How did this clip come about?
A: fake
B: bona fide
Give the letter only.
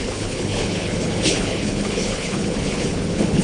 A